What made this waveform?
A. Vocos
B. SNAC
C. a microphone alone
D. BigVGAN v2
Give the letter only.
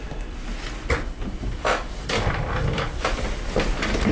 C